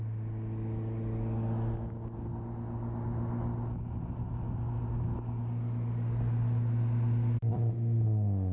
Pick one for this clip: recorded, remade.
recorded